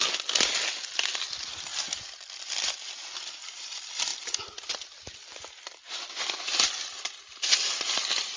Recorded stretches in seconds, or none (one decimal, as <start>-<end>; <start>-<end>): 0.0-1.7; 2.5-4.1; 5.3-8.4